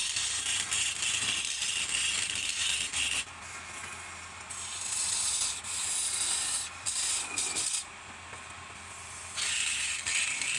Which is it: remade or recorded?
recorded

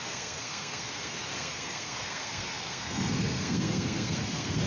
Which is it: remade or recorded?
remade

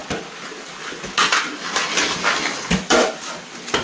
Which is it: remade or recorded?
recorded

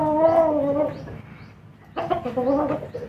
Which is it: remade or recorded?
recorded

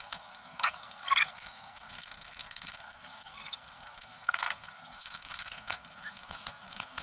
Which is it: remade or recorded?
remade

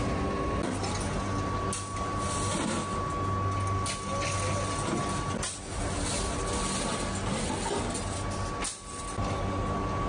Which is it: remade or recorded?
recorded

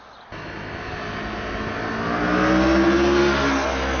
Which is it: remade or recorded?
recorded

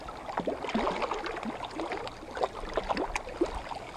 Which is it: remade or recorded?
recorded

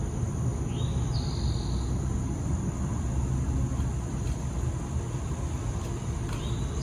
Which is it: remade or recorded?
recorded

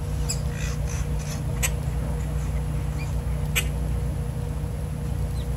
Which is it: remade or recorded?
recorded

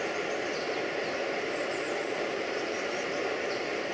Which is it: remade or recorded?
recorded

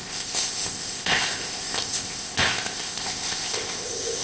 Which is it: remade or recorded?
remade